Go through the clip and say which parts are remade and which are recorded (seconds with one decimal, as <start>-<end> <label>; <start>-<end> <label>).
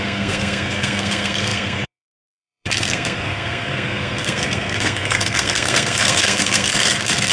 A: 0.0-7.3 remade